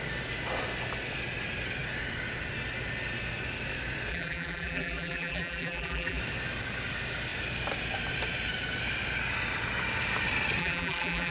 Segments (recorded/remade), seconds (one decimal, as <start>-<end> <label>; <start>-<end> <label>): 0.0-4.1 recorded; 4.1-6.2 remade; 6.2-10.6 recorded; 10.6-11.3 remade